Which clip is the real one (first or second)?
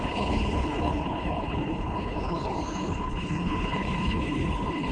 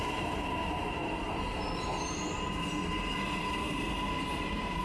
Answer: second